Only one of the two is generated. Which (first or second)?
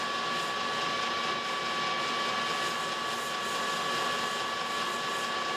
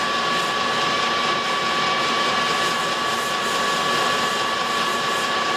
second